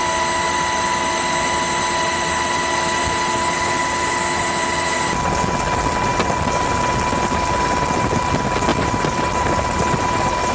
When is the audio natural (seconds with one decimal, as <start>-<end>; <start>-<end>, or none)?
0.0-8.7; 10.0-10.5